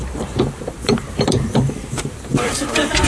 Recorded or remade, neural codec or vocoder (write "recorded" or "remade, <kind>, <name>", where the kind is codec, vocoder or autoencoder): remade, vocoder, BigVGAN v2